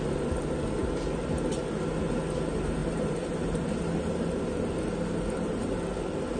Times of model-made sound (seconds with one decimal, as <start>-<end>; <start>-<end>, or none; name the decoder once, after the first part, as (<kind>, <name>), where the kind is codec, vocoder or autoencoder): 2.8-4.2 (vocoder, BigVGAN v2)